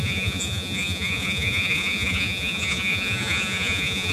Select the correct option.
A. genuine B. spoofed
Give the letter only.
B